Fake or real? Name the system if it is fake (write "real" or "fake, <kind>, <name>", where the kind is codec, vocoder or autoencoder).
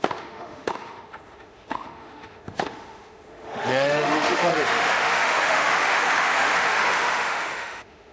fake, autoencoder, DAC-VAE